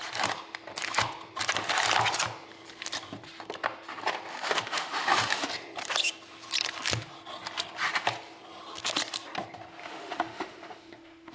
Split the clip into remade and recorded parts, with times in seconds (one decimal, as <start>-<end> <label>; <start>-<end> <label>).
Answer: 0.0-4.3 recorded; 4.3-5.5 remade; 5.5-9.8 recorded; 9.8-11.3 remade